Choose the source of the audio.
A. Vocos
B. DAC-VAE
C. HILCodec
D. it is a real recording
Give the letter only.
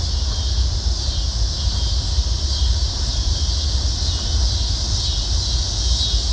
D